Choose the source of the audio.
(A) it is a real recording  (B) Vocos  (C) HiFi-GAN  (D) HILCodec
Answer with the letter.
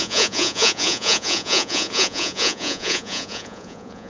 B